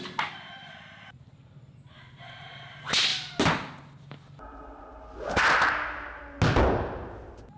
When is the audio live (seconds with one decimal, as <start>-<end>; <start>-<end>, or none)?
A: 0.0-7.6